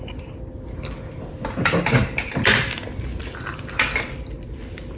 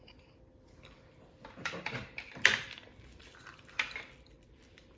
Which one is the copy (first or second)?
second